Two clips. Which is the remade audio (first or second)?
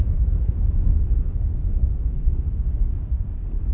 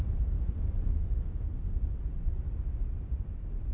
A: first